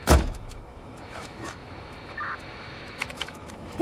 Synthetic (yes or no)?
yes